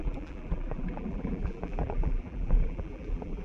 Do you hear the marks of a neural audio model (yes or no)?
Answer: yes